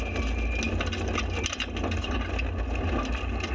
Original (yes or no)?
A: yes